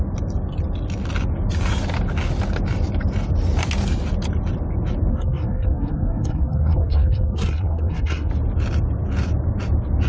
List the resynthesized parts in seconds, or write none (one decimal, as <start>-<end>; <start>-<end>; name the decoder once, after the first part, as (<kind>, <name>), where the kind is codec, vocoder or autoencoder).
5.1-8.3 (codec, SNAC)